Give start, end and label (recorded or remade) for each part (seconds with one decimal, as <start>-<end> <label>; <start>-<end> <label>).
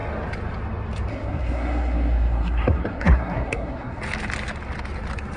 0.0-1.1 recorded; 1.1-4.0 remade; 4.0-5.4 recorded